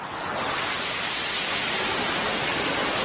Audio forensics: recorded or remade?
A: recorded